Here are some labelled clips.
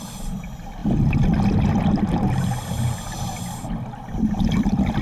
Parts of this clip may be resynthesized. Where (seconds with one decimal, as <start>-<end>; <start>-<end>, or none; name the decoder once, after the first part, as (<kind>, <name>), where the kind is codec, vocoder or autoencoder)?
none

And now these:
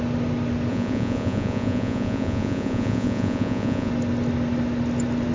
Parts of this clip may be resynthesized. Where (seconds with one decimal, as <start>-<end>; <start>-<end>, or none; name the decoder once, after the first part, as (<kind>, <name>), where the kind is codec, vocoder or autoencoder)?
0.7-3.9 (vocoder, Vocos)

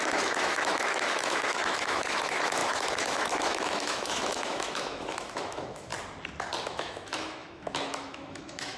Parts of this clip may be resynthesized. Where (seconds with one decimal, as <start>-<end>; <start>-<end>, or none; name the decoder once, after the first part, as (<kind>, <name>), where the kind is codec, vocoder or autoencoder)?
0.0-5.9 (autoencoder, DAC-VAE); 6.6-8.8

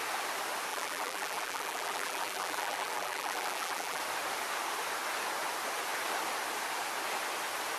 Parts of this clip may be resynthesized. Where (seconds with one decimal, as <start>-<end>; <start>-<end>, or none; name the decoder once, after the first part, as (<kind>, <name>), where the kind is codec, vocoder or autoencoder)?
0.7-4.0 (vocoder, BigVGAN v2)

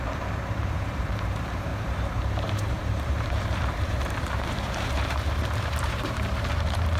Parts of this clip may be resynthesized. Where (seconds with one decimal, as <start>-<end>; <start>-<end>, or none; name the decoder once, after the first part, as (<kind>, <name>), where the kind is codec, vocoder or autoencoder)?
0.0-7.0 (vocoder, BigVGAN v2)

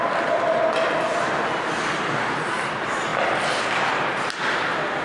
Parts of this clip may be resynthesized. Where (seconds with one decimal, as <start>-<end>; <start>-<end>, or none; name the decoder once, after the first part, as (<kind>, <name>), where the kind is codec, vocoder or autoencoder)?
none